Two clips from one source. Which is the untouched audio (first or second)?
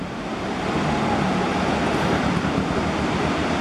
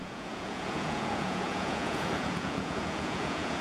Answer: first